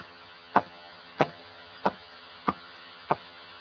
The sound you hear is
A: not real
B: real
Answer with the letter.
A